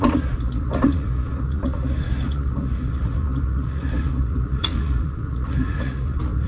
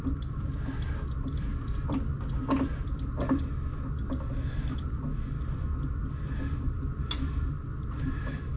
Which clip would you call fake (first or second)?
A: first